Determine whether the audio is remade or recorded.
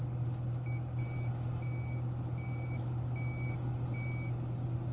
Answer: recorded